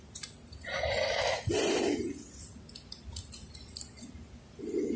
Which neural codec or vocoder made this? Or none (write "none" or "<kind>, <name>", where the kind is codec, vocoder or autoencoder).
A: none